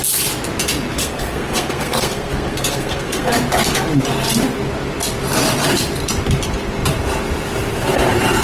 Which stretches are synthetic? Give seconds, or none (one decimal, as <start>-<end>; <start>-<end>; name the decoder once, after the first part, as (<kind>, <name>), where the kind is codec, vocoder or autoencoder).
1.0-3.3 (codec, SNAC)